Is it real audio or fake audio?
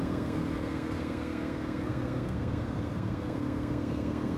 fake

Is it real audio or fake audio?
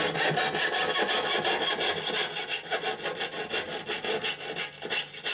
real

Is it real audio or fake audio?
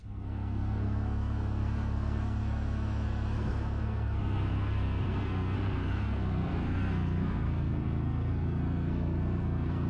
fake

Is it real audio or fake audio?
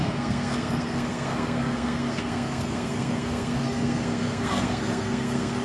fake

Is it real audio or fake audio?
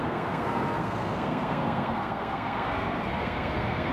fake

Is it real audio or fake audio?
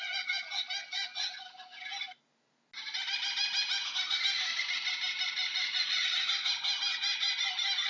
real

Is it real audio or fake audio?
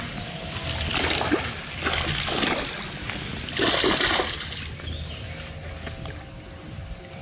real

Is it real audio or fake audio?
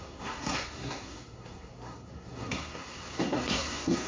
fake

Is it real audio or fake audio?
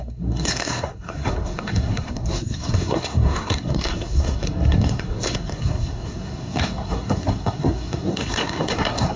fake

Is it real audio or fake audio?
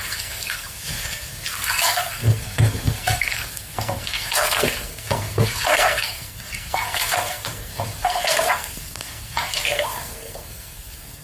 fake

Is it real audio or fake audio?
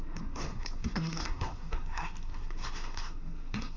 fake